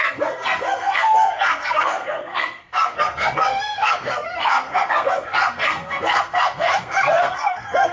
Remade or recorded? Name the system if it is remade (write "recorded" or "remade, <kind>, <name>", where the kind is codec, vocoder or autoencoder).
remade, codec, SNAC